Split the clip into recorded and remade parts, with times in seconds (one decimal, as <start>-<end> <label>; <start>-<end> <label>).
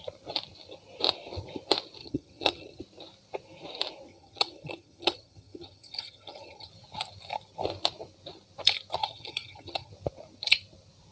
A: 0.0-2.0 recorded; 2.0-2.8 remade; 2.8-4.1 recorded; 4.1-6.7 remade; 6.7-9.0 recorded; 9.0-9.9 remade; 9.9-11.1 recorded